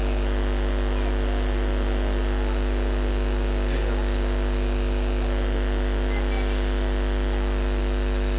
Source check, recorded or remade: recorded